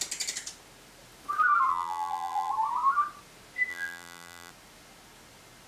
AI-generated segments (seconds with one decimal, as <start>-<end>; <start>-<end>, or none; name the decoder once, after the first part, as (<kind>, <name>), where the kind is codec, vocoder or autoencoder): 1.7-2.5 (vocoder, BigVGAN v2); 3.7-4.5